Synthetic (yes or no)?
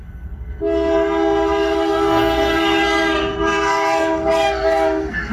yes